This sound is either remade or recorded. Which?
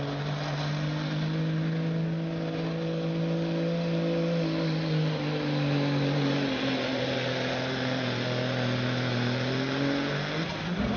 recorded